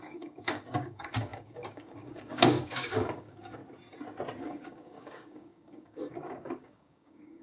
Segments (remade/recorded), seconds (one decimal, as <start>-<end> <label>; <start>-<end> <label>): 0.0-3.6 remade; 3.6-4.4 recorded; 4.4-7.4 remade